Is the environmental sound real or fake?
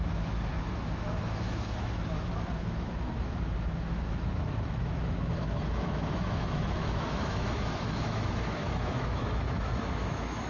fake